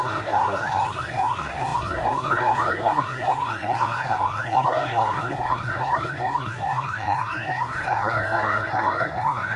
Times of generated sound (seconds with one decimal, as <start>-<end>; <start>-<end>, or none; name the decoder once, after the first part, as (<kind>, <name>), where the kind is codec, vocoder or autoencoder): 0.0-9.6 (codec, SNAC)